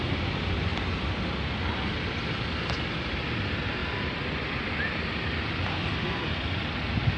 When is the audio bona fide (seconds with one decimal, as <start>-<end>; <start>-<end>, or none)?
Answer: 0.0-7.2